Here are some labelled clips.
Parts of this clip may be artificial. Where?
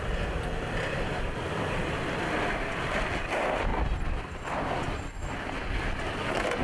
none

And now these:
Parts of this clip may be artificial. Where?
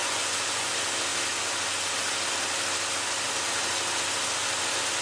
0.0-0.7 (vocoder, Vocos)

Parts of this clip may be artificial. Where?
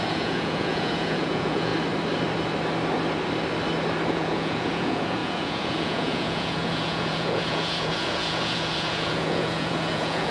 0.0-1.7 (vocoder, Vocos); 4.1-10.3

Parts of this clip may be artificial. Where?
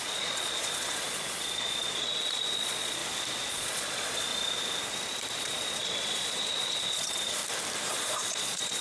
0.0-3.0 (vocoder, Vocos); 3.5-4.3; 5.4-7.4; 7.9-8.8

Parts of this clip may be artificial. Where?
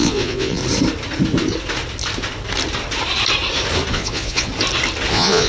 0.0-0.6 (vocoder, Vocos); 3.9-4.5; 5.1-5.5